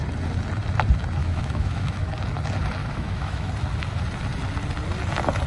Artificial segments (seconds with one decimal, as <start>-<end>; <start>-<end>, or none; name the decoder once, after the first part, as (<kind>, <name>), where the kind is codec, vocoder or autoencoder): 1.2-2.1 (autoencoder, DAC-VAE); 2.8-3.5